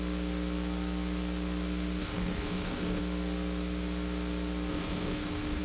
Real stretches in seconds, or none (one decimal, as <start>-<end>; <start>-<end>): 0.0-2.0; 3.0-4.7